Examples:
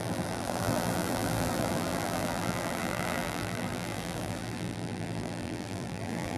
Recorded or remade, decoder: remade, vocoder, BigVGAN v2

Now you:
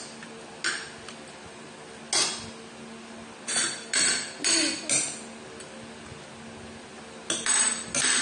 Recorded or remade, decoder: recorded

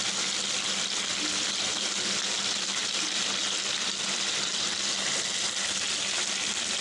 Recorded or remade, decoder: recorded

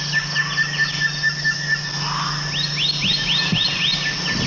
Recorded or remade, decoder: recorded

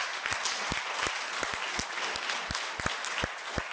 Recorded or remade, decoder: recorded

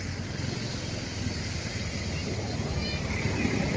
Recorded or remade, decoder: recorded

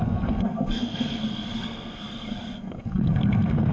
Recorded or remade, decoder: remade, codec, SNAC